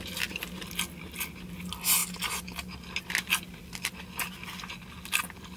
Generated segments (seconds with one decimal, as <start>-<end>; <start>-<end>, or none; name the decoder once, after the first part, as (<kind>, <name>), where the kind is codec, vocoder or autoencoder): none